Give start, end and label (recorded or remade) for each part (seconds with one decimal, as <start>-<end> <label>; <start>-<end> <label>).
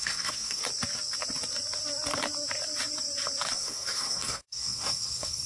0.0-0.6 remade; 0.6-3.5 recorded; 3.5-5.5 remade